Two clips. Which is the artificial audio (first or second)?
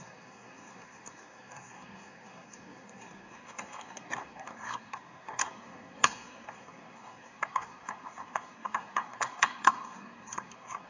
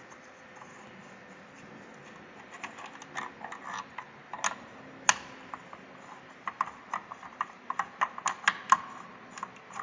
first